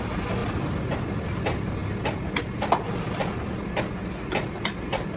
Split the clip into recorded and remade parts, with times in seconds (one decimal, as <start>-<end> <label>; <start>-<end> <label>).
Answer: 0.0-5.2 recorded